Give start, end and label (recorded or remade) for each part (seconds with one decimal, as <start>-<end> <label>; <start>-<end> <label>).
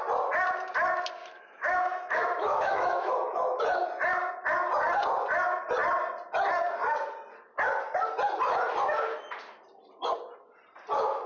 0.0-1.2 recorded; 1.2-3.6 remade; 3.6-11.3 recorded